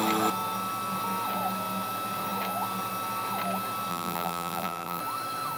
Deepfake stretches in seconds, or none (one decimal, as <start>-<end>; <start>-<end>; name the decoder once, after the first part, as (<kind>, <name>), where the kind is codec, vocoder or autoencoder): 3.9-5.0 (vocoder, BigVGAN v2)